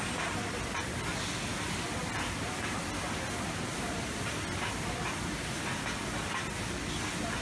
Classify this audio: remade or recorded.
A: recorded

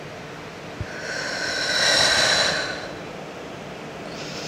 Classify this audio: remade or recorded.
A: recorded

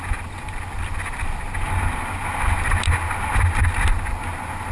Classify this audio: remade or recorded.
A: recorded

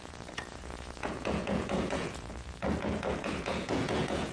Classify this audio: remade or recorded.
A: remade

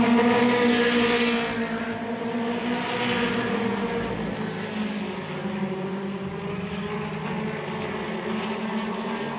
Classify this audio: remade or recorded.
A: recorded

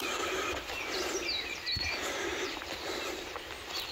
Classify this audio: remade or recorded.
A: recorded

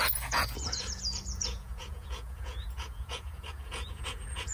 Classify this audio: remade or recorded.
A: remade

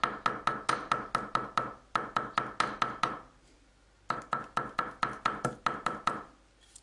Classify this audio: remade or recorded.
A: recorded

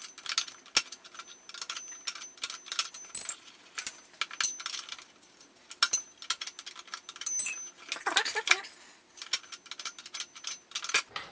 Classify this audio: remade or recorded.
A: recorded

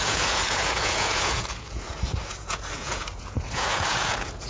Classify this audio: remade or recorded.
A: remade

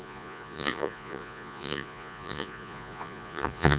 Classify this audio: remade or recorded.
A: remade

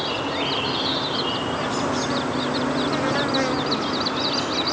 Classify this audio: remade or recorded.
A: recorded